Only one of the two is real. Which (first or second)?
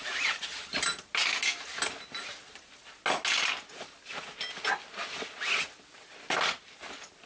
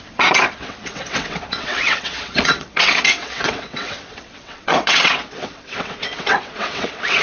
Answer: first